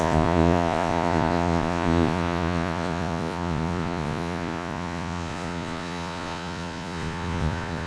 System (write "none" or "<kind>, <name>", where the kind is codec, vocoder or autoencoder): vocoder, Vocos